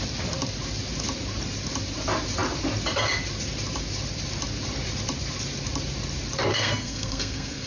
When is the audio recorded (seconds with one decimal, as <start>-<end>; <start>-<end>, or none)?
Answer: 0.0-6.5